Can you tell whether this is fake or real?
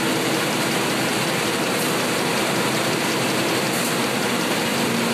real